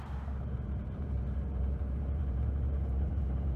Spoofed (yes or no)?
yes